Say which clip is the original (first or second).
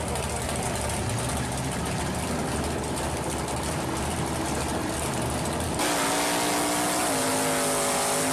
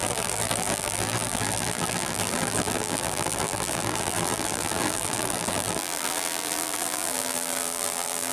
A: first